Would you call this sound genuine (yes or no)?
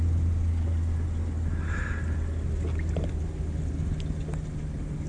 yes